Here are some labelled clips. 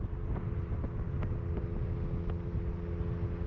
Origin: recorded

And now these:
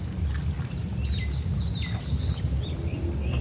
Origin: recorded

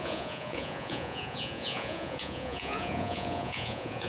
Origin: remade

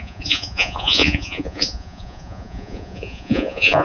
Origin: remade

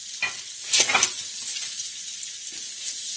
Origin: recorded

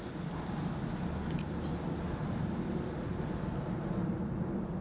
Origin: recorded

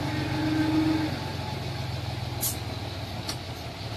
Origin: recorded